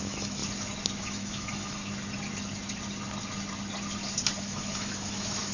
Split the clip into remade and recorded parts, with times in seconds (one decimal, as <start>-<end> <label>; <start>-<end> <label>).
0.0-0.4 remade; 0.4-1.0 recorded; 1.0-1.8 remade; 1.8-4.4 recorded; 4.4-5.5 remade